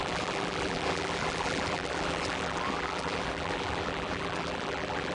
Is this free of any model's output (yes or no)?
no